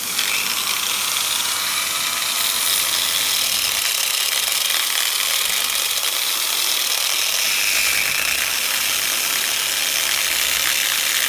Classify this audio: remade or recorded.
recorded